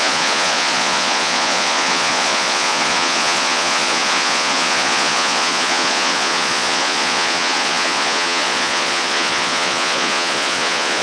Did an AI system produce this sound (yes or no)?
yes